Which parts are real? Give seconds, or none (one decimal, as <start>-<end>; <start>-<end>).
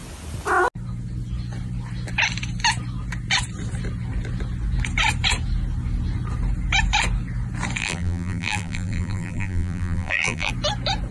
0.0-7.8; 10.5-11.1